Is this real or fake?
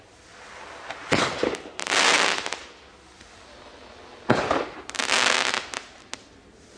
real